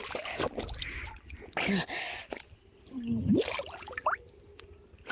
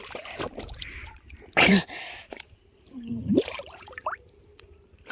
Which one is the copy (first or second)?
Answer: second